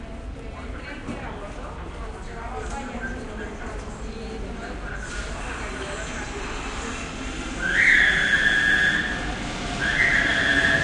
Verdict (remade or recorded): recorded